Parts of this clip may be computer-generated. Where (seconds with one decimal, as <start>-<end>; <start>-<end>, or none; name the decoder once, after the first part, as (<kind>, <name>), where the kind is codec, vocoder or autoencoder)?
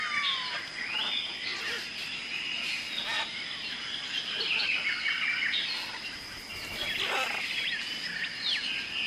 none